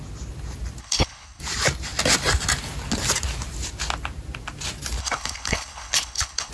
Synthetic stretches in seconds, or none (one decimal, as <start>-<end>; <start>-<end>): 0.8-1.4; 5.0-6.5